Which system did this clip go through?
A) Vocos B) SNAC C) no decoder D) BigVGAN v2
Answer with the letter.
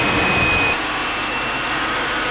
C